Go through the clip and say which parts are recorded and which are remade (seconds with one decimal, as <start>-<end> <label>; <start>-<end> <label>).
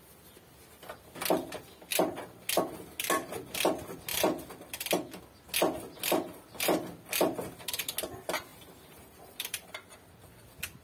0.0-4.1 recorded; 4.1-5.2 remade; 5.2-8.5 recorded; 8.5-10.2 remade; 10.2-10.8 recorded